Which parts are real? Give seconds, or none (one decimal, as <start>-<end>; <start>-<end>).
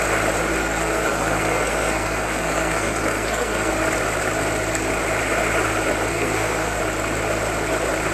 0.0-0.6; 3.7-6.1; 6.8-8.1